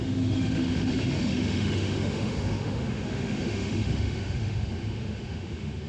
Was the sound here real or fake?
fake